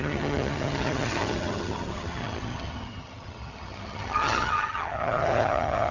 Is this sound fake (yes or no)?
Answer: yes